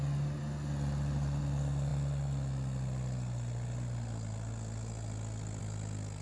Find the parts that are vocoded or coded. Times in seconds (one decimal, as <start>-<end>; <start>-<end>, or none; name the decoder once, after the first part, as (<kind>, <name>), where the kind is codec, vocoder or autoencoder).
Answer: none